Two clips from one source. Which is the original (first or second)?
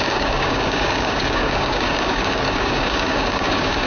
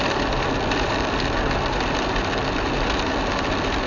second